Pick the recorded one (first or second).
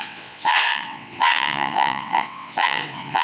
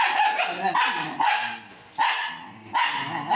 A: second